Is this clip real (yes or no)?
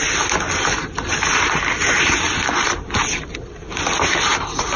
yes